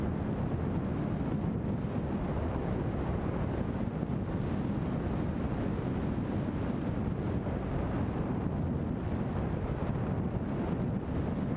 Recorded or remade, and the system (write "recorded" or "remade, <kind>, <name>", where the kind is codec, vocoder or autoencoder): recorded